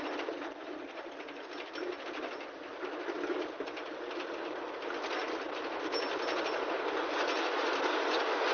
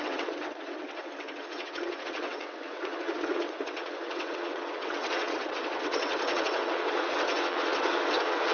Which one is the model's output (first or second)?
second